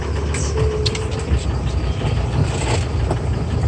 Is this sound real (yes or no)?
yes